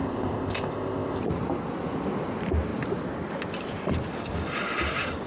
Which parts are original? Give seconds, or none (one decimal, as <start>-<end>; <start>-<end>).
1.2-5.3